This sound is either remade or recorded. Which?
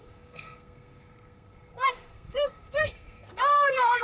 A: remade